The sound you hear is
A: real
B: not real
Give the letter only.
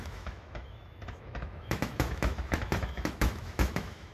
B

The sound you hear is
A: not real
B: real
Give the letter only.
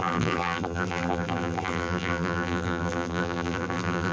A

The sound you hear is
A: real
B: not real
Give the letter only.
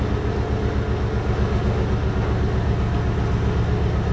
A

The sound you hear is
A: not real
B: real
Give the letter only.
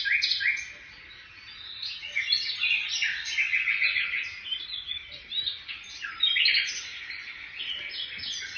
B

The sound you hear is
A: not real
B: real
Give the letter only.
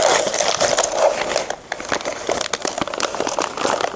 B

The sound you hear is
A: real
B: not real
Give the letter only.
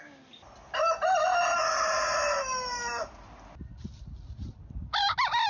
A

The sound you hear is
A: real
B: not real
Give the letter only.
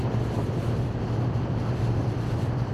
B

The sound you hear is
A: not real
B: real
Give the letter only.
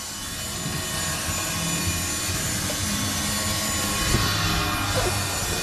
B